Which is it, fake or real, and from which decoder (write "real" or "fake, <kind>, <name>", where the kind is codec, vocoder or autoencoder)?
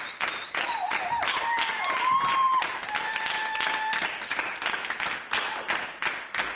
real